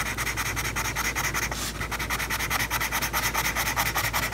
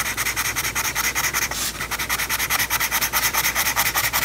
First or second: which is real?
first